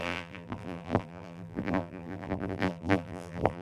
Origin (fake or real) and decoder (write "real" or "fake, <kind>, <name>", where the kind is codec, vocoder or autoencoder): fake, vocoder, BigVGAN v2